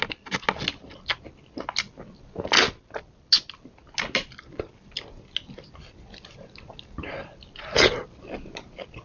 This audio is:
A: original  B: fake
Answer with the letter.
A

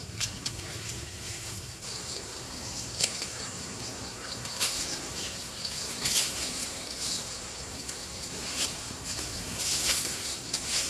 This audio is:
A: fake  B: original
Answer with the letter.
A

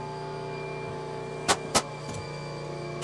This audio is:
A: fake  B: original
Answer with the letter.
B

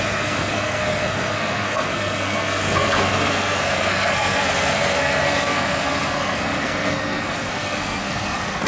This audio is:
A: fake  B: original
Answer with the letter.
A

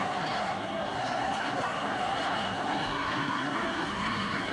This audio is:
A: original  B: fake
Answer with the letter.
B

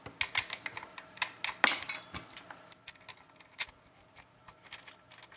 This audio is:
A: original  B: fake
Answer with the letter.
A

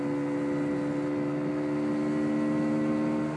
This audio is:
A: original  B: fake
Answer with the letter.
A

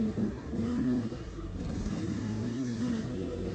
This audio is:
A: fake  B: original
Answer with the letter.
A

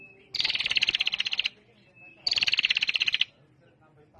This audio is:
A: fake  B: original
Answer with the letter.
B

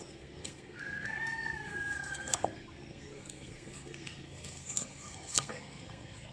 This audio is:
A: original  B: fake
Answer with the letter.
B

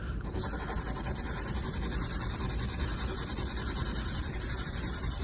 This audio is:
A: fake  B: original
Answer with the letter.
B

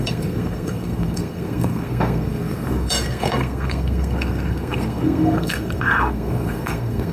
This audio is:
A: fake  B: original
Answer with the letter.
A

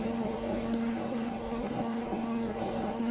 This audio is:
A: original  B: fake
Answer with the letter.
B